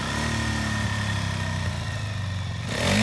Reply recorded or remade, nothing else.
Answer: recorded